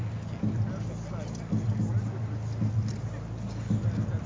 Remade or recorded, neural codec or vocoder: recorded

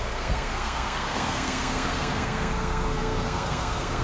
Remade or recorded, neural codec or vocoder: remade, codec, SNAC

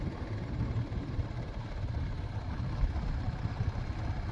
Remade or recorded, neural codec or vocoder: recorded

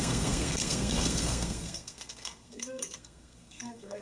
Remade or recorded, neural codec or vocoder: remade, codec, SNAC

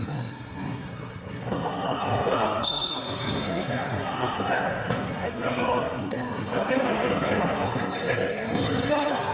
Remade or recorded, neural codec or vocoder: remade, codec, SNAC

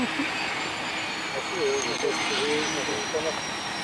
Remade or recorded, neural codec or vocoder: recorded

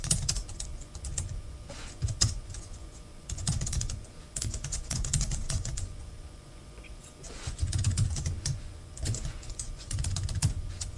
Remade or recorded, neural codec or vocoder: remade, vocoder, Vocos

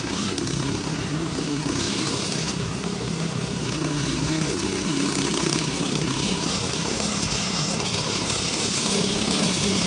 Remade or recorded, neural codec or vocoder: remade, codec, SNAC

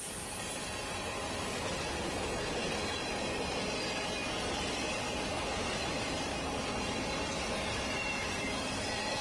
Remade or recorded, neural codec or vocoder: recorded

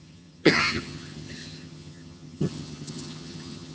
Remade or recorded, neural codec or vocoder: remade, vocoder, HiFi-GAN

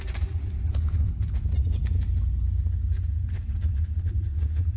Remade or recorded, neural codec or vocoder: recorded